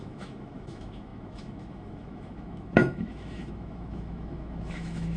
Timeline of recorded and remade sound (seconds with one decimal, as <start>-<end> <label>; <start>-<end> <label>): 0.0-5.2 remade